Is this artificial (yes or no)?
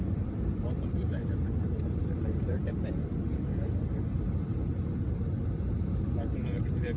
yes